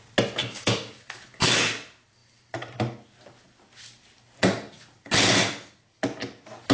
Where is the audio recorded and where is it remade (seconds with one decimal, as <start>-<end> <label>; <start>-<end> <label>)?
0.0-0.4 recorded; 0.4-1.0 remade; 1.0-6.7 recorded